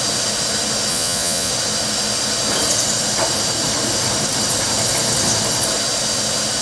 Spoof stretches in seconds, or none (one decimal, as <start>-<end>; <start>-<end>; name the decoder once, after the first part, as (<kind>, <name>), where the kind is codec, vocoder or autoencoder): 0.9-1.5 (vocoder, Vocos)